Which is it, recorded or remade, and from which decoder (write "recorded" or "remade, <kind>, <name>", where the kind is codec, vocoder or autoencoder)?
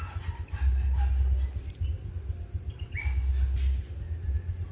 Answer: recorded